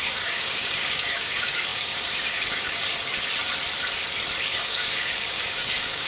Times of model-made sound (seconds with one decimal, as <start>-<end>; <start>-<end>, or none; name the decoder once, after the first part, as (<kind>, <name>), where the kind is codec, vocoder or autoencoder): 0.0-2.9 (codec, DAC); 4.4-6.1

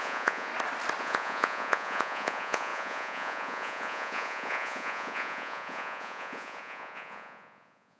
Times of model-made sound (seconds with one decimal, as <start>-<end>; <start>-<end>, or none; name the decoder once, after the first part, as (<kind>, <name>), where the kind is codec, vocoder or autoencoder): 0.0-0.5 (vocoder, Vocos); 1.0-8.0

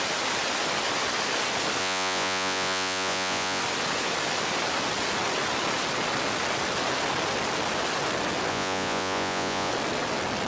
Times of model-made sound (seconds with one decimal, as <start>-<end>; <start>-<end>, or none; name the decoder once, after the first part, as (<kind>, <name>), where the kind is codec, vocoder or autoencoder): 1.8-3.6 (vocoder, Vocos); 8.5-9.7

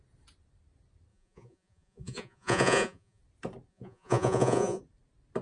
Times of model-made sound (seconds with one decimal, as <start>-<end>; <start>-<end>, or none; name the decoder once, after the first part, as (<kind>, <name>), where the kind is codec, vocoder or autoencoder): 1.1-3.2 (vocoder, Vocos); 3.7-4.8

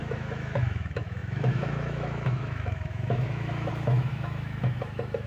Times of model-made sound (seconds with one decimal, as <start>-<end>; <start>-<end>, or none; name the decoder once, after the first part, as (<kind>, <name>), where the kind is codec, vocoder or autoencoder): 0.0-5.3 (autoencoder, DAC-VAE)

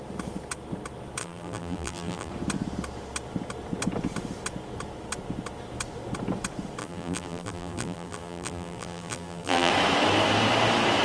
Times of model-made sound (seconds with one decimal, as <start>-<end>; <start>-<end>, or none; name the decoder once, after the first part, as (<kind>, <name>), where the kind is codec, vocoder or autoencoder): 1.2-2.3 (vocoder, BigVGAN v2); 6.8-9.7

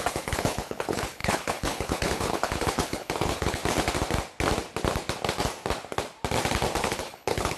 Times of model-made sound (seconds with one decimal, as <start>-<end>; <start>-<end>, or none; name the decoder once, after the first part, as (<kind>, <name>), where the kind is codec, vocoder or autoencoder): 0.0-3.6 (codec, HILCodec); 6.8-7.6